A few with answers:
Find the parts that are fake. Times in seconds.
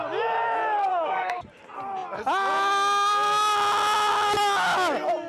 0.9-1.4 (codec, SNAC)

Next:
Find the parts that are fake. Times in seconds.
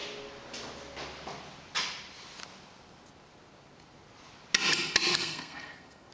5.1-6.1 (codec, SNAC)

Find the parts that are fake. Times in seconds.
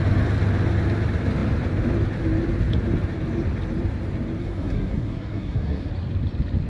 4.4-5.9 (codec, SNAC)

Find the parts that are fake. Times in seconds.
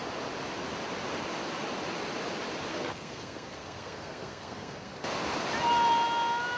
2.7-4.9 (codec, SNAC)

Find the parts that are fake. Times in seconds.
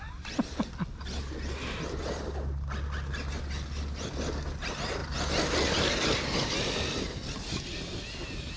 none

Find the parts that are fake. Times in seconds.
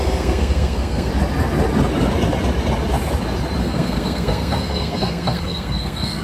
0.0-1.1 (codec, SNAC); 3.6-6.2